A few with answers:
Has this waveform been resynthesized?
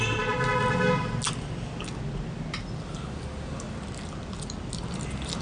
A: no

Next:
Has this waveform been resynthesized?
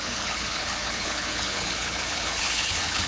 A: yes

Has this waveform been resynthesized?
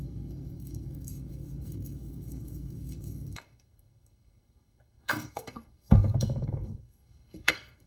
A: yes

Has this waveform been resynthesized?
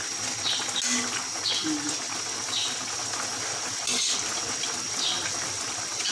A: no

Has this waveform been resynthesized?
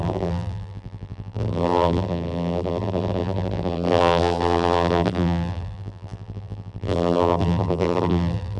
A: yes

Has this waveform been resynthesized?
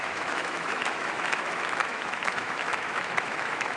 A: yes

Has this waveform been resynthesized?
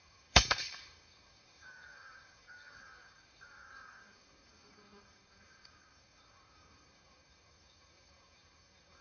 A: yes